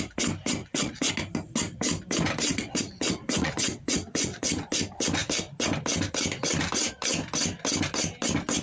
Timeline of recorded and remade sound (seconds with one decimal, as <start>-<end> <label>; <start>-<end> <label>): 0.0-0.6 recorded; 0.6-1.1 remade; 1.1-2.5 recorded; 2.5-4.5 remade; 4.5-8.6 recorded